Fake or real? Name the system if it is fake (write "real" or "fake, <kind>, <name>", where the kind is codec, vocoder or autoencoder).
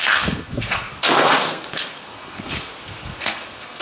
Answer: fake, codec, SNAC